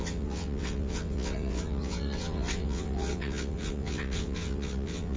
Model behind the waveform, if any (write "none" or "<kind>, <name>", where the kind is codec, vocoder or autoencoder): vocoder, WaveNeXt